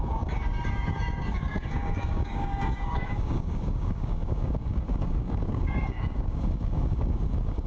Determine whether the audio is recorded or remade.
remade